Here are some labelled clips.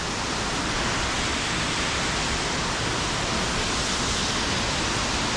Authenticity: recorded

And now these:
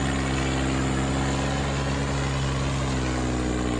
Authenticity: recorded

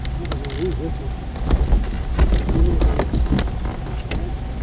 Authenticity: recorded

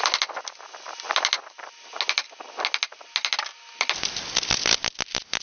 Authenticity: recorded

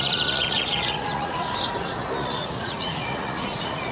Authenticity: remade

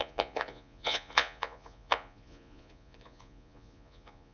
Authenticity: remade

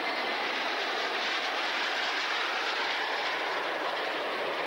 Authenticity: recorded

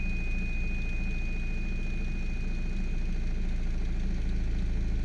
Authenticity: recorded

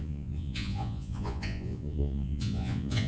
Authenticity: remade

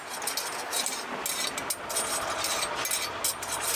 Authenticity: recorded